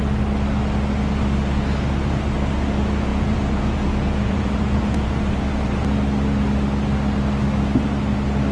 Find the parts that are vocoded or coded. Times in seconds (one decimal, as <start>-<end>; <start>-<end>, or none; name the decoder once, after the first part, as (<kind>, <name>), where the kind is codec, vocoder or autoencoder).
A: 3.1-5.1 (vocoder, Vocos)